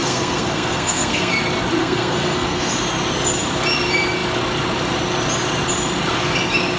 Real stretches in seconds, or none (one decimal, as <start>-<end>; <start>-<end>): 1.3-1.8; 2.7-6.8

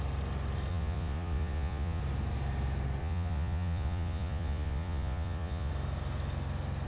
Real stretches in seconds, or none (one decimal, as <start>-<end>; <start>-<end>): 0.0-0.7; 2.0-3.0; 5.7-6.9

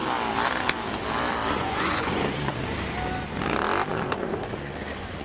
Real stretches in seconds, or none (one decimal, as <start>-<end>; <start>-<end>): 0.0-1.5; 2.6-3.9

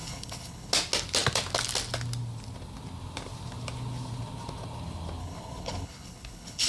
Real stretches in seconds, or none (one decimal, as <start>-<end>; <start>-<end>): 0.7-5.2

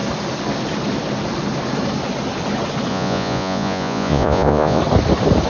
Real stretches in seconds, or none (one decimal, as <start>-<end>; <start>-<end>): 0.0-2.9; 4.8-5.5

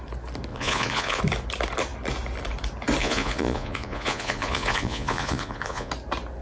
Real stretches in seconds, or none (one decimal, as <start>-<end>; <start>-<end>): 0.0-0.5; 1.2-3.0; 5.9-6.4

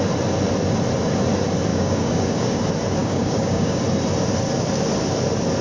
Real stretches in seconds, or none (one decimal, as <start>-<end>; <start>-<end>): 0.0-1.7; 2.6-3.0; 3.8-5.6